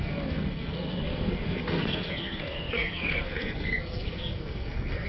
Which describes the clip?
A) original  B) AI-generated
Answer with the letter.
B